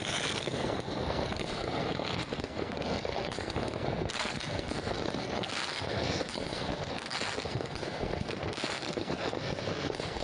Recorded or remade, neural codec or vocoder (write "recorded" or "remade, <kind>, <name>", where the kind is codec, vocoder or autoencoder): remade, codec, SNAC